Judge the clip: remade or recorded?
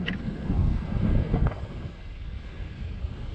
remade